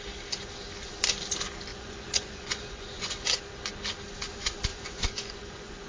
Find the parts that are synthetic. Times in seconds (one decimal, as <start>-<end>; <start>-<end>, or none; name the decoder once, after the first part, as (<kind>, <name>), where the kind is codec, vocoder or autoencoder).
1.7-3.1 (vocoder, Vocos); 4.7-5.9